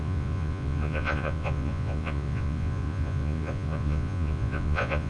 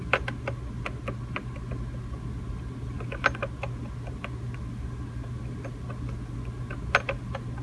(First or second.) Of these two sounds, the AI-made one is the first